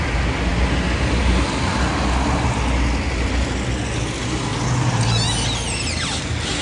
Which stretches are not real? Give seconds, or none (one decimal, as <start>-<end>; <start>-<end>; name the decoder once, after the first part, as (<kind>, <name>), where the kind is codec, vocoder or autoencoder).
none